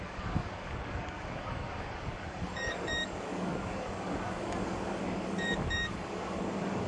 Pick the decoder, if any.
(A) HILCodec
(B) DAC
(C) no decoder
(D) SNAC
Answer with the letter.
B